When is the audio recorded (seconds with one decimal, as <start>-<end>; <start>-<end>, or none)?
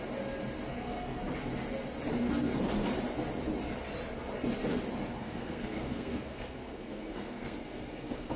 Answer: 0.0-0.7; 1.2-2.1; 2.6-5.2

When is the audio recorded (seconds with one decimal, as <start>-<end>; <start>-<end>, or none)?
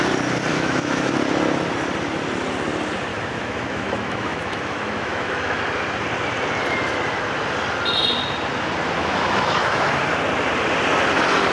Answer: 0.0-0.5; 1.1-3.1; 5.6-9.0; 10.0-11.5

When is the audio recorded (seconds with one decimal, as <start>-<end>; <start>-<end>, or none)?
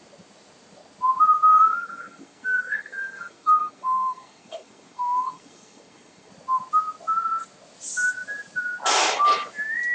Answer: 0.0-1.5; 6.3-9.9